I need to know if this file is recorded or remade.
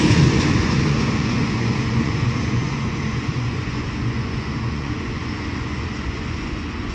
remade